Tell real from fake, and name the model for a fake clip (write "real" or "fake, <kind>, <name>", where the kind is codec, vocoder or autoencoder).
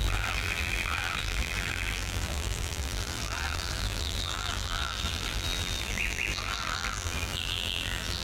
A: fake, vocoder, BigVGAN v2